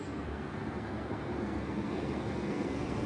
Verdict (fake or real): fake